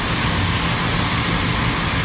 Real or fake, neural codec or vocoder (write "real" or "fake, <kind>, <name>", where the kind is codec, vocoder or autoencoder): real